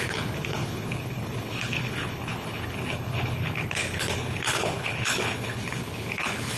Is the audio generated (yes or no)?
yes